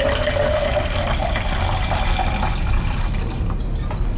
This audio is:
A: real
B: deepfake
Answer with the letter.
A